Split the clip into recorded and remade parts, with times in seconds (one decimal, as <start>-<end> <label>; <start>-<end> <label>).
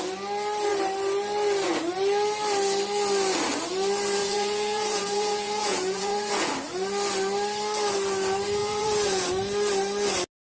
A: 0.0-4.2 recorded; 4.2-6.5 remade; 6.5-8.6 recorded; 8.6-9.3 remade; 9.3-10.4 recorded